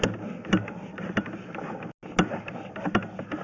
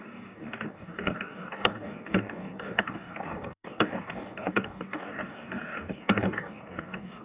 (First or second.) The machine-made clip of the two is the second